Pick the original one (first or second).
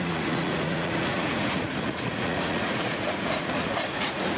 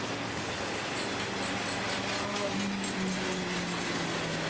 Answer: second